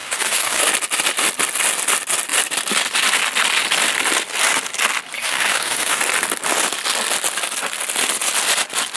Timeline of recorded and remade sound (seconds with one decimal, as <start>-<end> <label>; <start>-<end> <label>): 0.0-0.6 remade; 0.6-5.2 recorded; 5.2-6.0 remade; 6.0-9.0 recorded